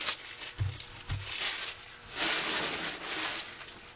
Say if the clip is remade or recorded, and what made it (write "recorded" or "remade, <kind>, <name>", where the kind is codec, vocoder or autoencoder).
recorded